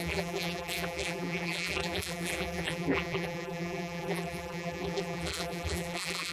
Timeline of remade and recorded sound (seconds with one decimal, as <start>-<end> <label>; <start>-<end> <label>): 0.0-6.3 remade